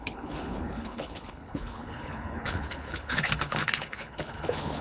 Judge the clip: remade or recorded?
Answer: remade